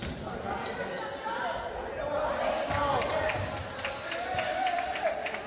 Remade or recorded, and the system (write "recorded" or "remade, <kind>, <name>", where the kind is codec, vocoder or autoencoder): recorded